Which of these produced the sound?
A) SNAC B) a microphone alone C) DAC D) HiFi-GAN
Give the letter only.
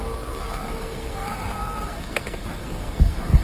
A